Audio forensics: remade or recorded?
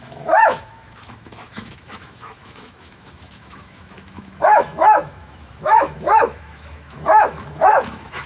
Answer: remade